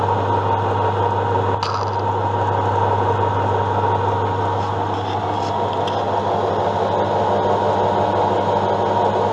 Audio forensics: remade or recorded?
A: recorded